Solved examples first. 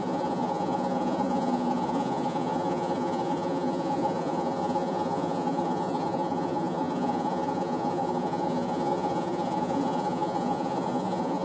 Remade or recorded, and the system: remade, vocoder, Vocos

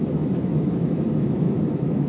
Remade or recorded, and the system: remade, autoencoder, DAC-VAE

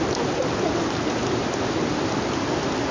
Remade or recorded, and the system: recorded